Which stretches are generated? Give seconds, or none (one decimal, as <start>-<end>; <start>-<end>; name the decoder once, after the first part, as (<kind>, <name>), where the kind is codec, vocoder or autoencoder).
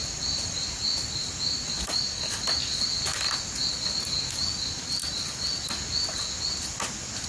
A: none